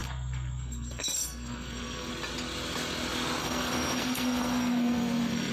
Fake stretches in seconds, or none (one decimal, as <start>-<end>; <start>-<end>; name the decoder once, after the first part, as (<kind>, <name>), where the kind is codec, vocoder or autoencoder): 0.0-2.1 (codec, SNAC); 3.4-5.5